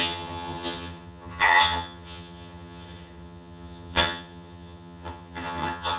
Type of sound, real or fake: fake